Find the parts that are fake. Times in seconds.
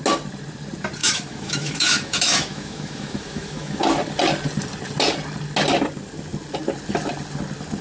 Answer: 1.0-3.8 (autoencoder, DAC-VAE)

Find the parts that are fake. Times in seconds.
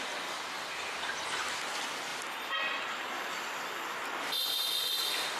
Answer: none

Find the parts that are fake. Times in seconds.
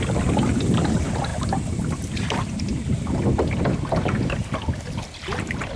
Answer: none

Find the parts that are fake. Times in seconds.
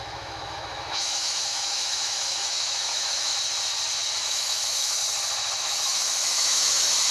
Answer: 0.0-3.3 (autoencoder, DAC-VAE); 4.2-5.0; 5.6-7.1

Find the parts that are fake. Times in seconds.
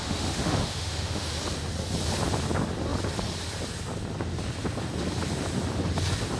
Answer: 0.0-1.3 (autoencoder, DAC-VAE)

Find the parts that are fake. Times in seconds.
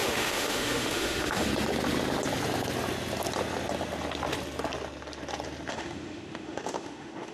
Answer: 0.0-1.5 (autoencoder, DAC-VAE); 5.7-7.3